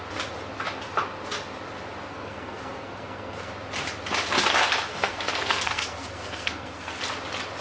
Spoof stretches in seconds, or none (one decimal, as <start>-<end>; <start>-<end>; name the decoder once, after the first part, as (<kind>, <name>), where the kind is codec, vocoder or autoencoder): 2.1-3.5 (codec, SNAC); 4.9-7.0